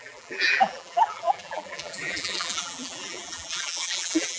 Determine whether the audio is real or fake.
fake